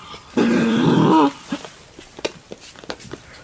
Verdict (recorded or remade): recorded